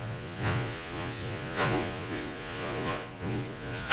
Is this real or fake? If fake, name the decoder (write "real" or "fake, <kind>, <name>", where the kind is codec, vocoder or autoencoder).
fake, vocoder, Vocos